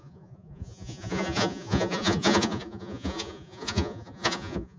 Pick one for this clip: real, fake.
fake